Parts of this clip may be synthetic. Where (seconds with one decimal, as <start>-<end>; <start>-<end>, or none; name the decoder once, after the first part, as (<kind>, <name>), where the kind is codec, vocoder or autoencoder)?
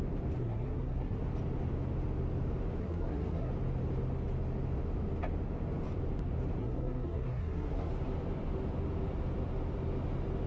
0.4-1.2 (codec, SNAC); 2.8-3.5; 6.6-7.9